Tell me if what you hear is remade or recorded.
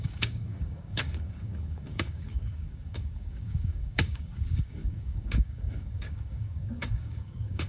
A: remade